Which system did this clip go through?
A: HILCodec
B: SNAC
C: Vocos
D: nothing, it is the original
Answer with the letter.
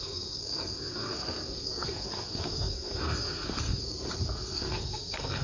B